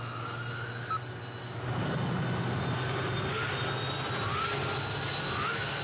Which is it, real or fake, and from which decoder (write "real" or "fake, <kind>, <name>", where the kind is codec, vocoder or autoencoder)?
real